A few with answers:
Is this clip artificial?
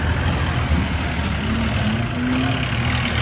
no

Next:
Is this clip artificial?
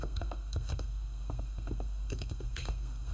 yes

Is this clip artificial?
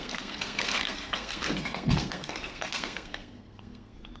yes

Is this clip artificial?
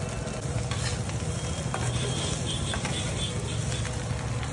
no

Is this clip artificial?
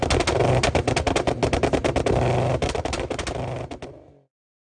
no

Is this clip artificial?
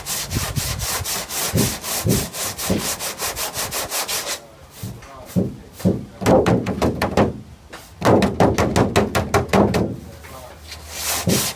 no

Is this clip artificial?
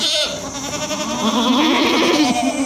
no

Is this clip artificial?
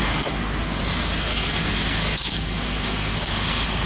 yes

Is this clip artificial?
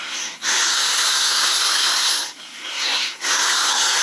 yes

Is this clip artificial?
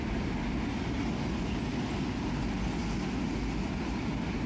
no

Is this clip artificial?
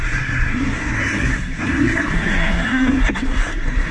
yes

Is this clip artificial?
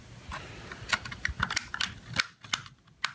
no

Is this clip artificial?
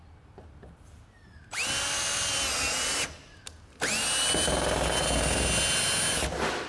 no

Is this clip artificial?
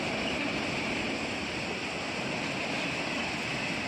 no